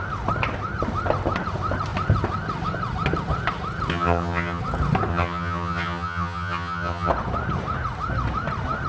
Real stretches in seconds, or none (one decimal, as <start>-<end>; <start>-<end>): 0.0-3.9; 4.6-5.1; 7.1-8.9